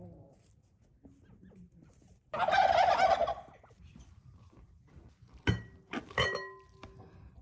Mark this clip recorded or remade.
recorded